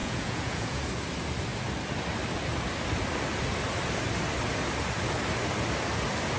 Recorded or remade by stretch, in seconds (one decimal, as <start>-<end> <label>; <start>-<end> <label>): 0.0-0.8 remade; 0.8-6.4 recorded